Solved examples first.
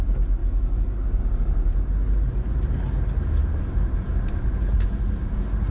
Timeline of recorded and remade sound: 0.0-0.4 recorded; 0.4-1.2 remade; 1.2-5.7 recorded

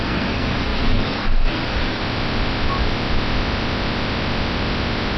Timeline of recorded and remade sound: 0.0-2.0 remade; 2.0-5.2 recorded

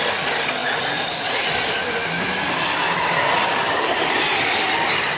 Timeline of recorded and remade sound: 0.0-5.2 recorded

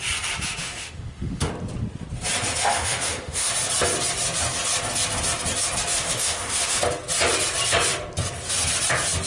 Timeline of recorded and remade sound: 0.0-0.6 recorded; 0.6-1.5 remade; 1.5-2.7 recorded; 2.7-3.5 remade; 3.5-5.9 recorded; 5.9-6.8 remade; 6.8-9.3 recorded

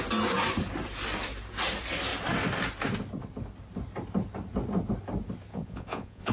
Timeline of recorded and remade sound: 0.0-5.5 recorded; 5.5-6.3 remade